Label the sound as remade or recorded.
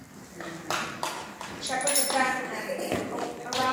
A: recorded